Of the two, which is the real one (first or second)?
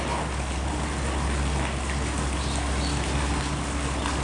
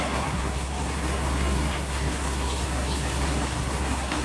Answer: first